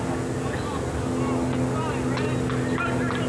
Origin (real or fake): real